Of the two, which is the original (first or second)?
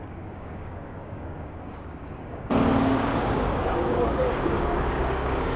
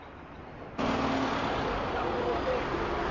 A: second